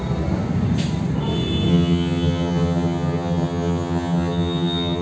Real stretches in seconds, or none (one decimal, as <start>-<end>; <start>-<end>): 0.0-1.7

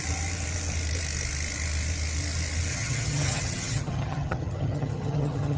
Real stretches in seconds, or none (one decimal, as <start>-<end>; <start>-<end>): 0.0-2.7

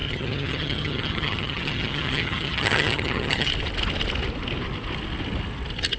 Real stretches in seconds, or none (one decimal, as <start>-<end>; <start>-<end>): 3.5-6.0

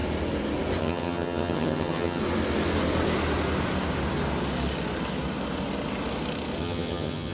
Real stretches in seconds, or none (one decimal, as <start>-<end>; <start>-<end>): 0.0-0.8; 2.2-6.6

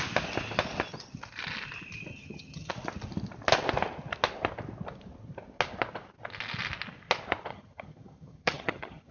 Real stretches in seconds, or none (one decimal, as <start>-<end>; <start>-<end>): 0.0-2.1; 2.7-7.5

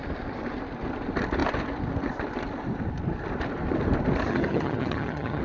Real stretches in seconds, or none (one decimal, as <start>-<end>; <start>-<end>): 0.0-4.3

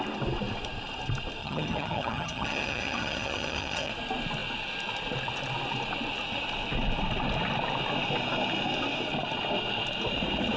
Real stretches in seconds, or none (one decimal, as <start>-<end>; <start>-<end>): 0.0-1.4; 3.9-10.6

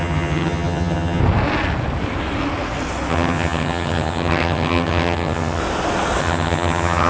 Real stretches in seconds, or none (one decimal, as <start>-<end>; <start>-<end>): 1.2-3.1; 5.6-6.2